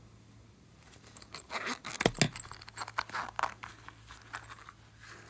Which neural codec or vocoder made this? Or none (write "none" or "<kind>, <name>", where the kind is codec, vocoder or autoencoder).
none